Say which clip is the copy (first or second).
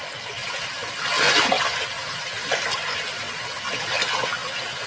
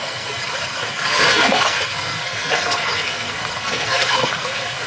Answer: second